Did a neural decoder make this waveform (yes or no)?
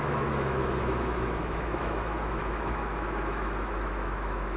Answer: yes